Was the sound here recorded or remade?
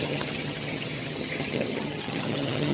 remade